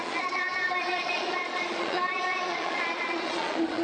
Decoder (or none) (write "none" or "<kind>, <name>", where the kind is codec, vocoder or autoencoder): vocoder, Vocos